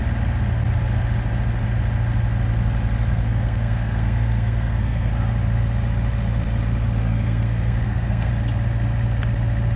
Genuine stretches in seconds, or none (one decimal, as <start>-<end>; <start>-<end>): 0.0-3.1; 5.1-7.0; 8.3-9.8